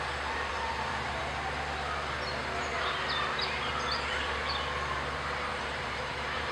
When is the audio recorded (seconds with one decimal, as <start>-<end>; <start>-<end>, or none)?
0.0-0.5; 1.2-5.5